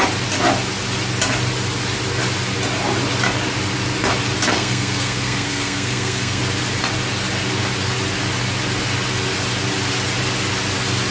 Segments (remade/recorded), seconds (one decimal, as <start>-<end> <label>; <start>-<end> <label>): 0.0-4.5 recorded; 4.5-6.4 remade; 6.4-11.1 recorded